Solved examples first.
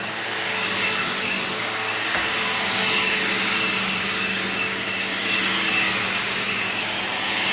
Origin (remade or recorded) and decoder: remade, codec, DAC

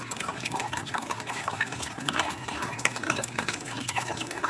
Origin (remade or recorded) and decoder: remade, codec, SNAC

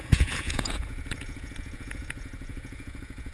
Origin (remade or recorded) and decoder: remade, vocoder, Vocos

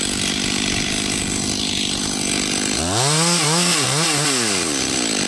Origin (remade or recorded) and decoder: recorded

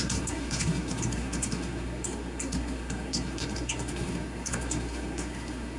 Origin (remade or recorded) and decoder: remade, codec, SNAC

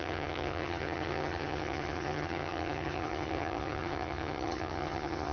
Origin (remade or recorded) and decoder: remade, vocoder, HiFi-GAN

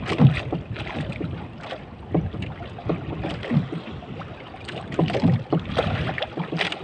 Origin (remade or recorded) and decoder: recorded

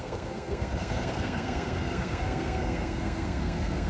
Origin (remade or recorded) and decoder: remade, codec, SNAC